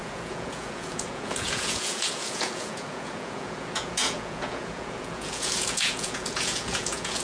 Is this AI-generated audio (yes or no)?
yes